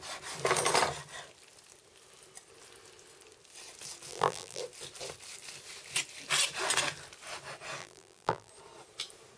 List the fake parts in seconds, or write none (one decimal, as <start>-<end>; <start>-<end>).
4.1-4.6; 7.8-8.5